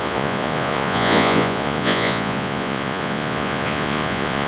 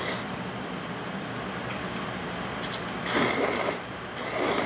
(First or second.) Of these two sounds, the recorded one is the second